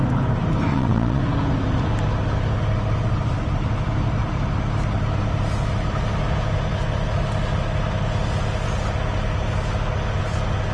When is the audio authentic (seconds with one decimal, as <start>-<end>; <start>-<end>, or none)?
0.0-0.7; 1.2-10.7